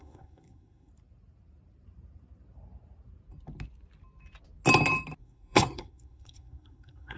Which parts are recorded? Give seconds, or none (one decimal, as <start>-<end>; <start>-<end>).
0.9-5.2